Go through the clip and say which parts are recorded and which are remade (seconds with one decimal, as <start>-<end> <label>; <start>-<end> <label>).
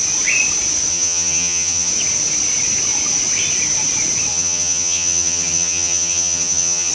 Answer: 0.0-0.9 recorded; 0.9-1.9 remade; 1.9-4.3 recorded; 4.3-6.9 remade